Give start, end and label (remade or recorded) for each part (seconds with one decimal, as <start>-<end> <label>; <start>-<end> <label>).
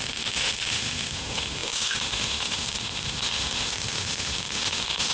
0.0-5.1 remade